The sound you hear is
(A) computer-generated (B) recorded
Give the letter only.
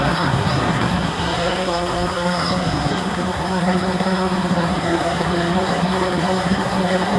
A